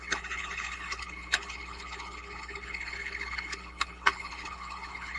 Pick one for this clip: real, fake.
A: fake